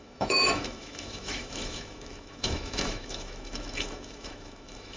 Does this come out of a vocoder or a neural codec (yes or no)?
yes